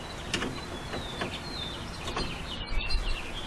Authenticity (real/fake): real